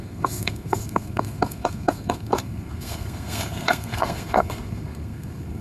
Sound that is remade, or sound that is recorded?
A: remade